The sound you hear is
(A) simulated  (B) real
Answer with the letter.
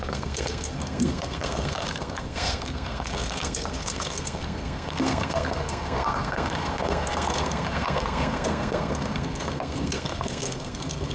A